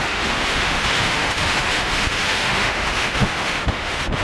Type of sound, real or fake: fake